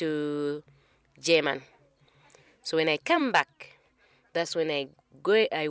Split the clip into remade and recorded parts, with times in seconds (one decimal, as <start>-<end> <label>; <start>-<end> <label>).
0.0-1.9 recorded; 1.9-3.2 remade; 3.2-5.7 recorded

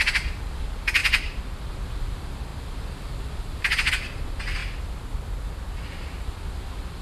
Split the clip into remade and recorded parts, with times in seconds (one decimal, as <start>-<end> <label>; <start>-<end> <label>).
0.0-4.6 remade; 4.6-5.7 recorded; 5.7-7.0 remade

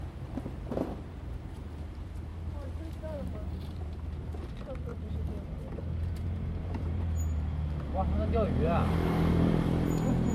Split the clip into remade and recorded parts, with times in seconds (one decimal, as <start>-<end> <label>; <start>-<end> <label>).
0.0-10.3 remade

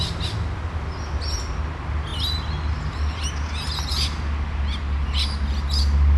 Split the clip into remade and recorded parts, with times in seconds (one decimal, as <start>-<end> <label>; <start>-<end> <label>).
0.0-6.2 recorded

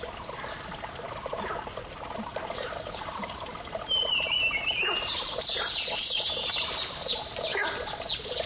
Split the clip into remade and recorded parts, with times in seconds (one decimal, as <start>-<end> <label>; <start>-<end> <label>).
0.0-2.3 recorded; 2.3-5.6 remade; 5.6-8.5 recorded